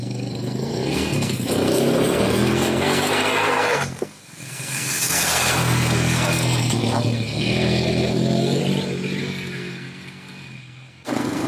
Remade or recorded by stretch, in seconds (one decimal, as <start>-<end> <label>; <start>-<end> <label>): 0.0-8.6 remade; 8.6-9.2 recorded; 9.2-11.5 remade